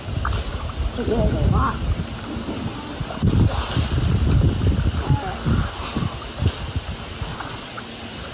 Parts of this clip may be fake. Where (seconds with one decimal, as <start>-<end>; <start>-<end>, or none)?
7.3-7.8